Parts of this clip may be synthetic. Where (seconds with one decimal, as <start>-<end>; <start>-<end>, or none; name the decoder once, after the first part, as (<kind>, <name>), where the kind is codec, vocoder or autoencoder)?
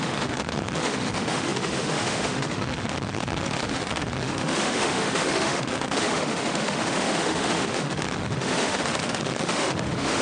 0.0-10.2 (autoencoder, DAC-VAE)